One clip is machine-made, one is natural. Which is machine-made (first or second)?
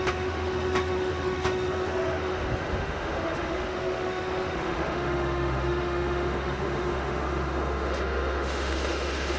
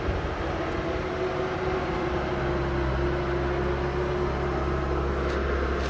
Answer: first